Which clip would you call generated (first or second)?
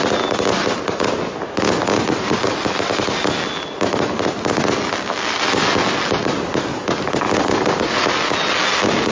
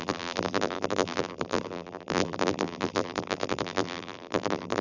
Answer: second